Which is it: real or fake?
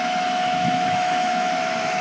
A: fake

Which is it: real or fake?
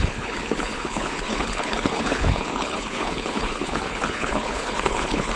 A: fake